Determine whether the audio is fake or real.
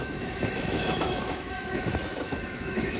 fake